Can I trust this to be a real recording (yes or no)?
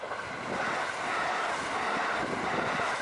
yes